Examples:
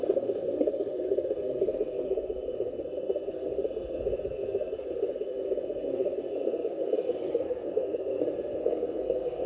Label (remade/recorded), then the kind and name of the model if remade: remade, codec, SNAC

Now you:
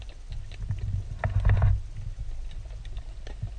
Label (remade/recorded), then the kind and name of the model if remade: recorded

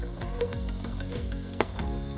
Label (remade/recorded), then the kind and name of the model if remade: remade, codec, SNAC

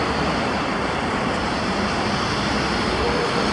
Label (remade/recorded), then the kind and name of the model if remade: recorded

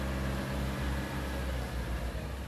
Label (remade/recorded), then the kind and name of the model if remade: recorded